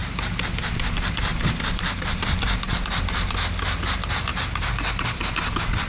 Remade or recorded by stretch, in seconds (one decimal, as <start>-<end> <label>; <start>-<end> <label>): 0.0-0.9 remade; 0.9-1.3 recorded; 1.3-3.0 remade; 3.0-4.3 recorded; 4.3-5.3 remade; 5.3-5.9 recorded

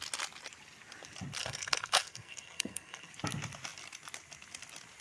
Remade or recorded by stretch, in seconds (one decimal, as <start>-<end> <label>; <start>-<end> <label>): 0.0-1.4 recorded; 1.4-3.1 remade; 3.1-5.0 recorded

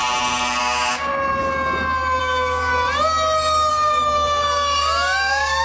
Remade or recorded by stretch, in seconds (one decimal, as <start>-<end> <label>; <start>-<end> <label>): 0.0-0.6 recorded; 0.6-1.1 remade; 1.1-2.2 recorded; 2.2-2.7 remade; 2.7-3.7 recorded; 3.7-5.6 remade

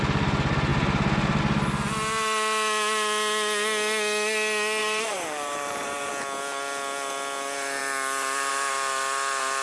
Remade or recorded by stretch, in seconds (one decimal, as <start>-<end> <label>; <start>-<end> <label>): 0.0-0.7 recorded; 0.7-1.4 remade; 1.4-4.8 recorded; 4.8-6.1 remade; 6.1-9.6 recorded